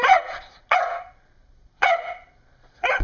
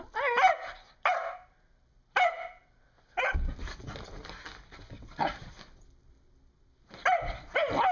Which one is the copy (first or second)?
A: first